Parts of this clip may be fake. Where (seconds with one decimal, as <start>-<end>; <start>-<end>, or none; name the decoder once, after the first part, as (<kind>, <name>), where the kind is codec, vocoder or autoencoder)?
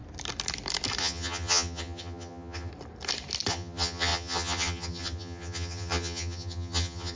1.0-2.7 (vocoder, HiFi-GAN); 3.5-7.2